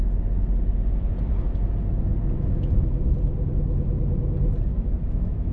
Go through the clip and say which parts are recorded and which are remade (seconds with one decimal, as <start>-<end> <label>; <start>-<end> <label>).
0.0-4.7 recorded; 4.7-5.5 remade